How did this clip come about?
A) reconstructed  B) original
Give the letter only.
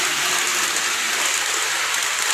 B